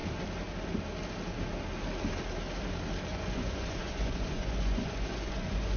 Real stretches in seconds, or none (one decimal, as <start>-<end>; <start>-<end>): 0.0-3.1